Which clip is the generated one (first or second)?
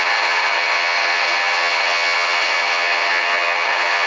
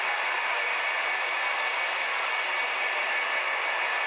first